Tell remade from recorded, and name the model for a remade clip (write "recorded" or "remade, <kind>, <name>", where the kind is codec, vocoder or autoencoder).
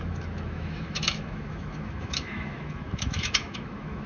remade, autoencoder, DAC-VAE